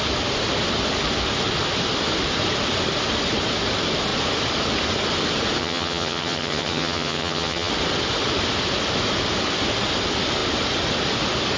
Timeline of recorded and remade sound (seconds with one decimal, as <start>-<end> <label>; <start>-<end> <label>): 0.0-5.6 recorded; 5.6-7.7 remade; 7.7-11.6 recorded